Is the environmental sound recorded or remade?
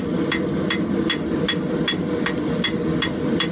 recorded